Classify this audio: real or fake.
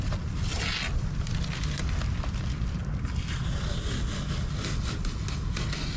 real